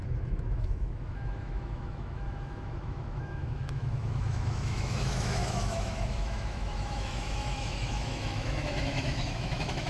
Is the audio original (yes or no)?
no